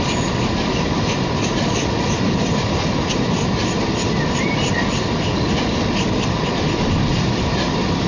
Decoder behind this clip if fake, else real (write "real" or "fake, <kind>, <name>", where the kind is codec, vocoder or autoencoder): real